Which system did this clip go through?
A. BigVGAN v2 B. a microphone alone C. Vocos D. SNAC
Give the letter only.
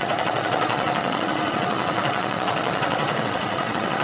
C